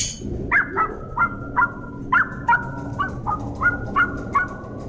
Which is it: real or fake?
real